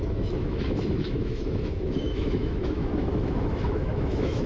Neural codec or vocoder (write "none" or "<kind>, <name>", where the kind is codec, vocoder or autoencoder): autoencoder, DAC-VAE